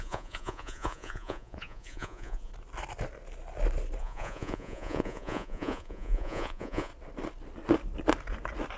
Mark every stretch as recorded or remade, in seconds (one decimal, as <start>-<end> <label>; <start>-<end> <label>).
0.0-2.5 remade; 2.5-4.0 recorded; 4.0-6.9 remade; 6.9-8.8 recorded